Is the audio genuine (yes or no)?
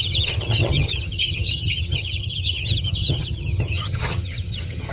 no